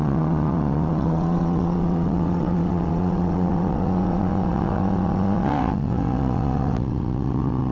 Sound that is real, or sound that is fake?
fake